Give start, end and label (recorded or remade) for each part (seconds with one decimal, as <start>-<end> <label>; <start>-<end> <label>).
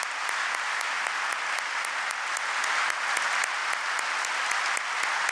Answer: 0.0-5.3 recorded